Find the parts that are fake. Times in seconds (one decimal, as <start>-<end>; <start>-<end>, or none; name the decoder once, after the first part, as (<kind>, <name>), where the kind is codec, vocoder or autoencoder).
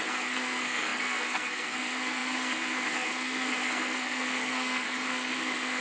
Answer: 0.0-5.8 (codec, SNAC)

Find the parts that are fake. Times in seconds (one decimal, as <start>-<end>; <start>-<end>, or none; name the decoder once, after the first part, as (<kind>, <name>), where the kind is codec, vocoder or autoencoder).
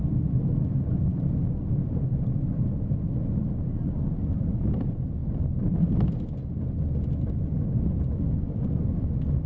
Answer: 1.1-4.2 (vocoder, BigVGAN v2)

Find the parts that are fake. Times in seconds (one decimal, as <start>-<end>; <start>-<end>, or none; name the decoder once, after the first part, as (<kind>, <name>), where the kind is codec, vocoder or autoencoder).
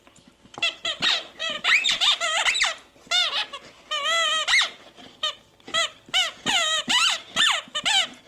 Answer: 1.4-2.4 (vocoder, BigVGAN v2)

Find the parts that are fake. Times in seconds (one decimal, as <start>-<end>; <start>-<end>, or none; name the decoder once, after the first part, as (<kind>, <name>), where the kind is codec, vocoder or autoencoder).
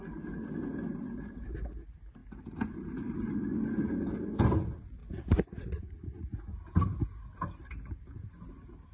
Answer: 5.0-6.2 (vocoder, Vocos)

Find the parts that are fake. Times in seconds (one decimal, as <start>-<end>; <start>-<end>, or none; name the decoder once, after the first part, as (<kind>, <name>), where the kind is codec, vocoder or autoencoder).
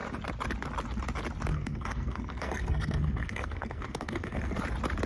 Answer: 1.5-4.6 (codec, SNAC)